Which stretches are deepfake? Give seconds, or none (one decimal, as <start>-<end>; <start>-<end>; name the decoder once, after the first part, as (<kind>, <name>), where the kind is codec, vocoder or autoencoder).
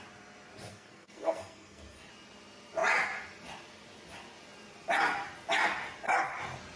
0.7-2.1 (codec, SNAC)